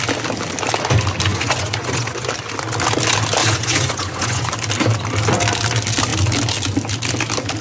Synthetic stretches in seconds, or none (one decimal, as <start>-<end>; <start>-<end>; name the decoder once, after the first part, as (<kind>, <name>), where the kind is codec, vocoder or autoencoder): 1.3-2.3 (vocoder, Vocos); 3.4-4.5